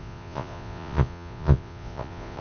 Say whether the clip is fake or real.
fake